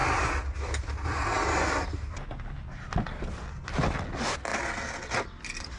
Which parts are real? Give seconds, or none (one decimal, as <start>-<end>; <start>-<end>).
0.0-5.8